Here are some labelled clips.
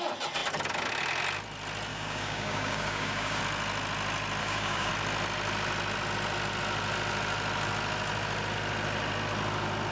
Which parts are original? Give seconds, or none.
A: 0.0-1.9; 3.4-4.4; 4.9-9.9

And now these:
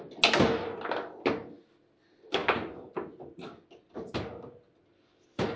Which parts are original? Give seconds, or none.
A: 0.0-5.6

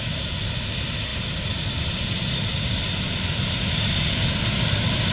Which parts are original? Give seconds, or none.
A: 0.0-1.1; 4.2-5.1

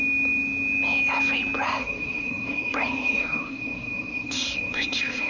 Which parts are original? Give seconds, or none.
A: 0.0-1.8